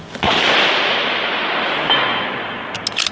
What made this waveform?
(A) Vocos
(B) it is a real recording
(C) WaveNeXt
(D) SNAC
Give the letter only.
B